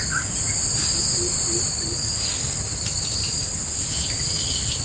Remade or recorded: recorded